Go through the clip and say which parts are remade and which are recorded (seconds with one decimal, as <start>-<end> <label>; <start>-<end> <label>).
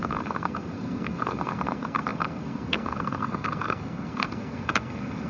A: 0.0-5.3 remade